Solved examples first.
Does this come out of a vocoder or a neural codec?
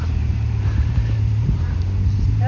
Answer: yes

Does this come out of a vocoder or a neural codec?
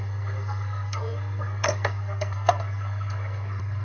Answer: yes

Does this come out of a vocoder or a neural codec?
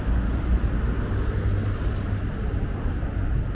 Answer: no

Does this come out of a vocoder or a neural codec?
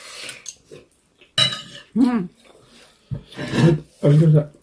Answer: no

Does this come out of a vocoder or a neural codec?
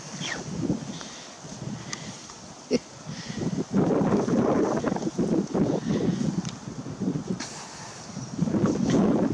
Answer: no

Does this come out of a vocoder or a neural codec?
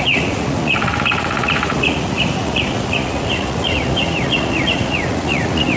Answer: yes